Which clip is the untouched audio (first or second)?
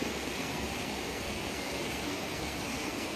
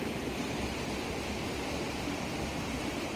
second